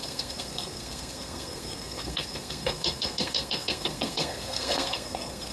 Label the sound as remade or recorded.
remade